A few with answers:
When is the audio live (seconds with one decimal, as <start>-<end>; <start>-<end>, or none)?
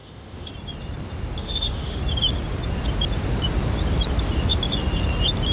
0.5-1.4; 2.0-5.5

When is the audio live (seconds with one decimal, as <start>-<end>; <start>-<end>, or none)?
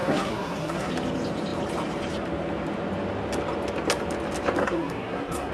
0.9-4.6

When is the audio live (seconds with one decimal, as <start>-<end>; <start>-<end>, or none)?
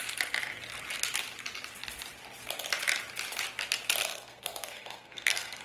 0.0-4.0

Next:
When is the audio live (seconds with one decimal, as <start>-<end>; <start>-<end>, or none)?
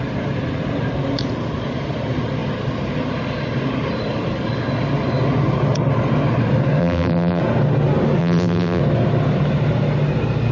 0.0-6.8; 7.4-8.2; 8.8-10.5